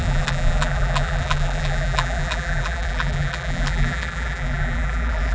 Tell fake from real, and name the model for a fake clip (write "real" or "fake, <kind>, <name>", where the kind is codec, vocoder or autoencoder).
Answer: fake, vocoder, BigVGAN v2